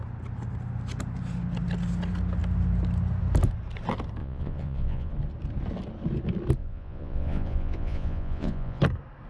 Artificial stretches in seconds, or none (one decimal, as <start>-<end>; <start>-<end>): 4.2-5.1; 6.6-8.8